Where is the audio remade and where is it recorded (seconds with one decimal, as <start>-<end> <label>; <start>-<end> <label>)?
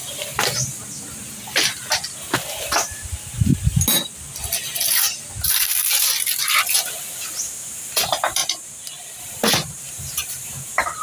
0.0-2.6 recorded; 2.6-3.5 remade; 3.5-7.4 recorded; 7.4-8.4 remade; 8.4-9.2 recorded; 9.2-11.0 remade